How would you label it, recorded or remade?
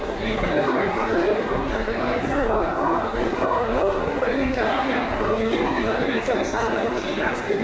remade